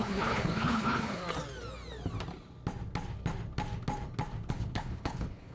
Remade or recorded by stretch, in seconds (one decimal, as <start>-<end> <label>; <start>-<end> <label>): 0.0-1.2 remade; 1.2-4.5 recorded; 4.5-5.5 remade